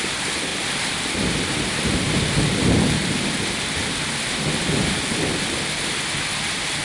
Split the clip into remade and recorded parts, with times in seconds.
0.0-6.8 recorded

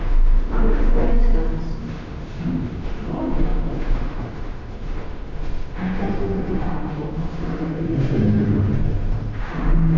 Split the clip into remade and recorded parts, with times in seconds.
0.0-1.1 remade; 1.1-1.8 recorded; 1.8-10.0 remade

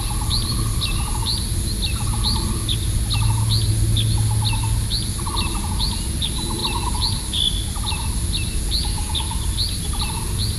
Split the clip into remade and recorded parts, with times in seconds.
0.0-10.6 recorded

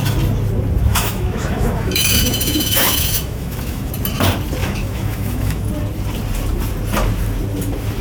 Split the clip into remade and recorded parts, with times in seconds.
0.0-0.9 recorded; 0.9-3.9 remade; 3.9-4.6 recorded; 4.6-5.7 remade; 5.7-8.0 recorded

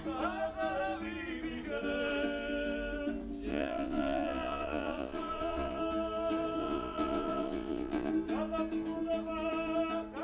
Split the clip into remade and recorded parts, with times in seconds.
0.0-3.5 recorded; 3.5-5.8 remade; 5.8-6.6 recorded; 6.6-8.1 remade; 8.1-10.2 recorded

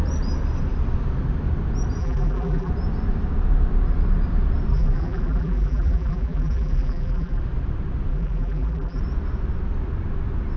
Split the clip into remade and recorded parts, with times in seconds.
0.0-2.0 recorded; 2.0-2.7 remade; 2.7-4.7 recorded; 4.7-7.4 remade; 7.4-8.1 recorded; 8.1-9.0 remade; 9.0-10.6 recorded